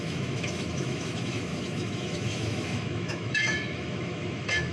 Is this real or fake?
fake